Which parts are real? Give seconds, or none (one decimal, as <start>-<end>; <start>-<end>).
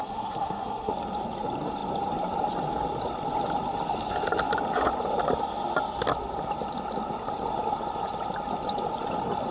0.9-9.5